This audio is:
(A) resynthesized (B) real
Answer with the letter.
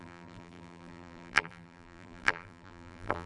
A